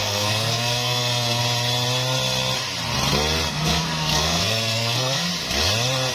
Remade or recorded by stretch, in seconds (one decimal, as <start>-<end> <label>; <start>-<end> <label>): 0.0-1.4 remade; 1.4-3.5 recorded; 3.5-5.3 remade; 5.3-6.1 recorded